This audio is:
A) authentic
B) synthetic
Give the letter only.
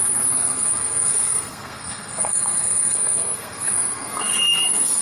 B